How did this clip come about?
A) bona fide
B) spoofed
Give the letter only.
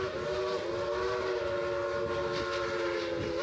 A